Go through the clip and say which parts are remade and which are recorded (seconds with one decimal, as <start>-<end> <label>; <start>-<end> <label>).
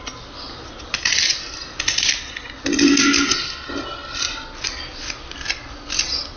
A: 0.0-6.4 recorded